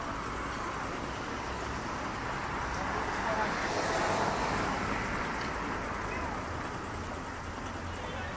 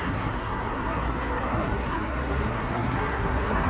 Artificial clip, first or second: second